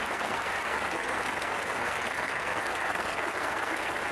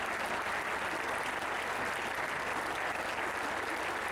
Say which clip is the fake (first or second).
first